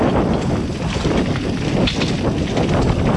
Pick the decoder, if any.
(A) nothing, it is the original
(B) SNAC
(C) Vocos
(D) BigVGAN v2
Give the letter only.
A